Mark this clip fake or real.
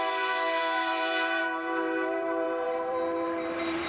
fake